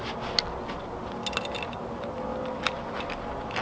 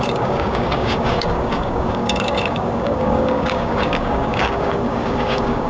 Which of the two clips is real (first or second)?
first